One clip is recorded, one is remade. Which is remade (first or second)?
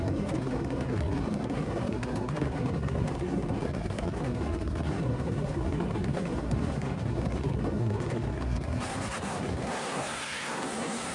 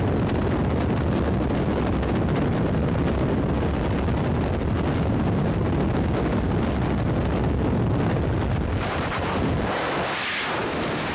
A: first